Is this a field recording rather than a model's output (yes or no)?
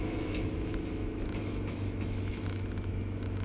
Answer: no